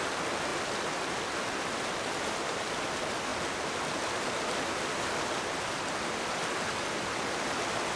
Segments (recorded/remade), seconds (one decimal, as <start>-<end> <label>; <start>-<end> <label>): 0.0-8.0 recorded